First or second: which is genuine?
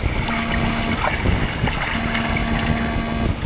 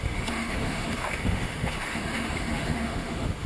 first